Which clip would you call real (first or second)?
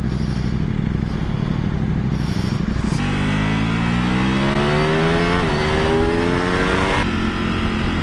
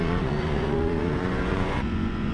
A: first